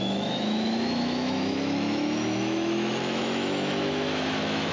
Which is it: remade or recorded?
remade